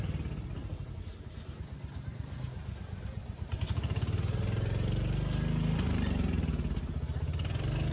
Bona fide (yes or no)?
yes